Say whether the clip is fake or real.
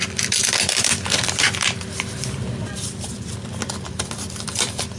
fake